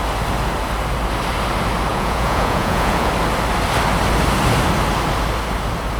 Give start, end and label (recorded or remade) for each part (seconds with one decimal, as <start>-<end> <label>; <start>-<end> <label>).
0.0-1.9 recorded; 1.9-3.1 remade; 3.1-6.0 recorded

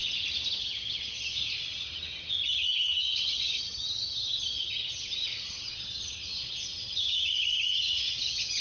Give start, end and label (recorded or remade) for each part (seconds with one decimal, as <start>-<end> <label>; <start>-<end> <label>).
0.0-0.6 recorded; 0.6-8.6 remade